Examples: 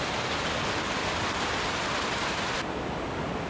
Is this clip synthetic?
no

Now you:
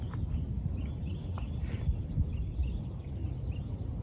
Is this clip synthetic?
no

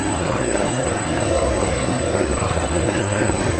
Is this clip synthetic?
yes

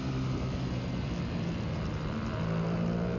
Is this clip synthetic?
no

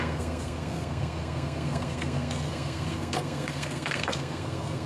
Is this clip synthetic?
yes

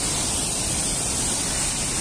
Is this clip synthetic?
no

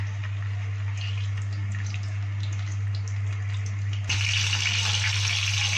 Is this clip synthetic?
no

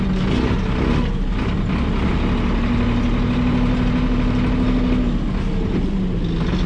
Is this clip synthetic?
no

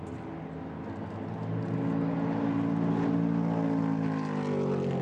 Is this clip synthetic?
no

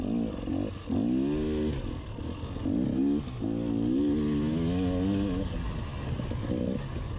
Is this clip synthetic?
no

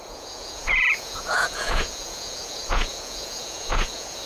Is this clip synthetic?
yes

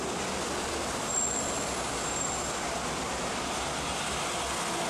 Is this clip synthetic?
no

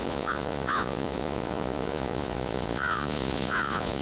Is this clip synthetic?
yes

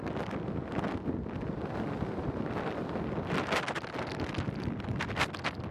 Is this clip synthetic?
no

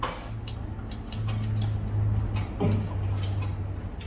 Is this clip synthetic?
no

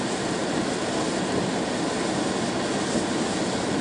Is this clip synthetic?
no